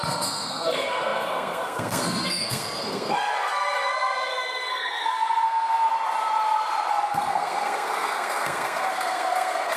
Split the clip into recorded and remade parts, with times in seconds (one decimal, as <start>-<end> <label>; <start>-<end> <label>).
0.0-5.9 remade; 5.9-6.9 recorded; 6.9-9.8 remade